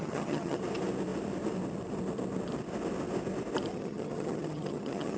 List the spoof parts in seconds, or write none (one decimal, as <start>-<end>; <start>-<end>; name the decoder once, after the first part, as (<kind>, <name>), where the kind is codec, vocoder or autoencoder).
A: 0.0-0.6 (vocoder, HiFi-GAN); 3.7-5.2